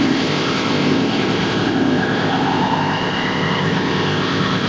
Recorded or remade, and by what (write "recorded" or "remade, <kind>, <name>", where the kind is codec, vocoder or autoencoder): remade, codec, ZipCodec